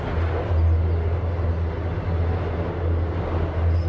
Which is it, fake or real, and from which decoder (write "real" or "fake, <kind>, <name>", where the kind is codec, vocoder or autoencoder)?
real